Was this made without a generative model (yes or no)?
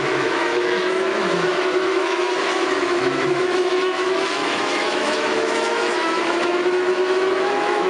no